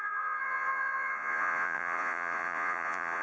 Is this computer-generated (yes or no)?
yes